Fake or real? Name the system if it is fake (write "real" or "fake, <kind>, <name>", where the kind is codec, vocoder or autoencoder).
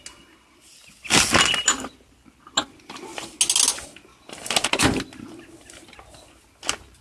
real